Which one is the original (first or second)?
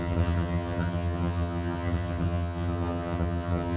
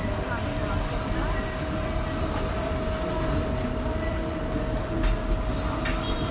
second